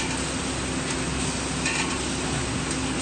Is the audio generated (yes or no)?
no